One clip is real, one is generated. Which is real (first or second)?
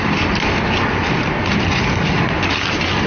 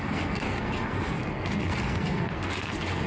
first